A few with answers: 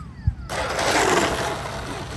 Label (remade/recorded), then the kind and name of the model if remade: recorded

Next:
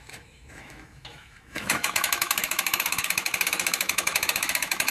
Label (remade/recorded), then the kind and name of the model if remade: remade, autoencoder, DAC-VAE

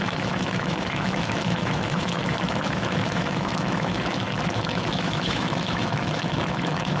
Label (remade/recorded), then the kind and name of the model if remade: remade, autoencoder, DAC-VAE